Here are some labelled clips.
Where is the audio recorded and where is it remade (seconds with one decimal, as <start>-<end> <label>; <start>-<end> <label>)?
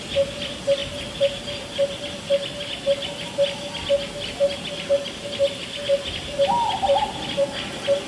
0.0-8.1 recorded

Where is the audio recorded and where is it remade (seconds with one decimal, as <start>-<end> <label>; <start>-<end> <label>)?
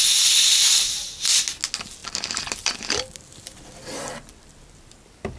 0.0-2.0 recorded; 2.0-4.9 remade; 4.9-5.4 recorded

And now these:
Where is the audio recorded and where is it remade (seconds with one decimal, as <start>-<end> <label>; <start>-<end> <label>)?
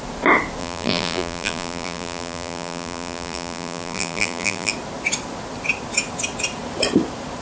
0.0-0.6 recorded; 0.6-4.7 remade; 4.7-7.4 recorded